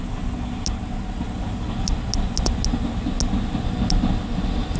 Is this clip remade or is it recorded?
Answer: recorded